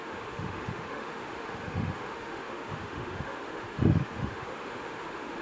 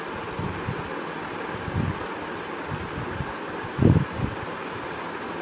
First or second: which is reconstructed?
first